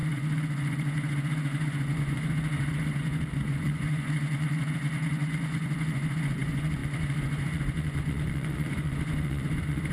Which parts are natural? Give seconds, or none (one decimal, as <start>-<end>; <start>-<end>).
none